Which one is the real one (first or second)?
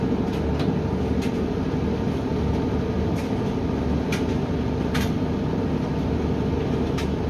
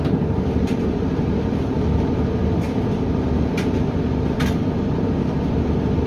first